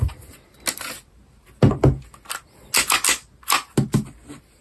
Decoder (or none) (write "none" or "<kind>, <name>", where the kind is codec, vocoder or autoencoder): none